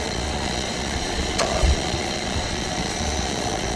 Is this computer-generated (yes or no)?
yes